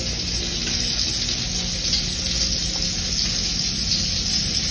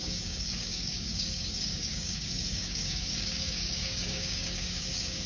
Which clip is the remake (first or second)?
second